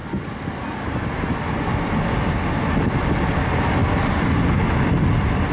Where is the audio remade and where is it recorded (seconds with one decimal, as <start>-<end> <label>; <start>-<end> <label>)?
0.0-5.5 recorded